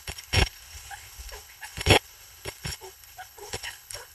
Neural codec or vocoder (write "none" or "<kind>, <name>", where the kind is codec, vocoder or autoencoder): codec, HILCodec